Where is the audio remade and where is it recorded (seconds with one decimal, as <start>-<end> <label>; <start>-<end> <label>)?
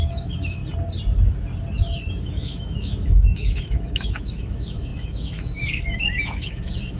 0.0-0.6 remade; 0.6-2.1 recorded; 2.1-7.0 remade